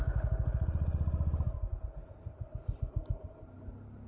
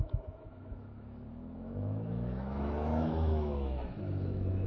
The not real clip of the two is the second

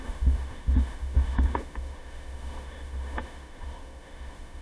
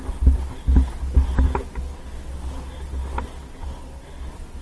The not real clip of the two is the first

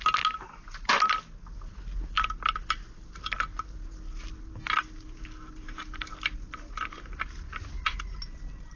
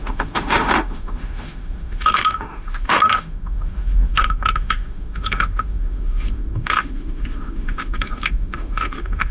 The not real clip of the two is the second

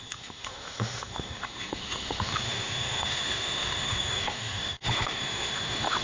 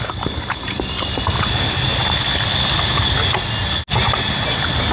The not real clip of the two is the first